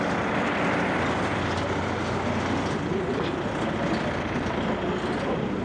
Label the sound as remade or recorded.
recorded